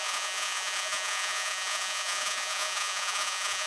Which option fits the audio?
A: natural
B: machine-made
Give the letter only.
B